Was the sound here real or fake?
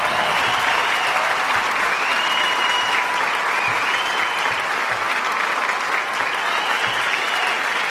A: real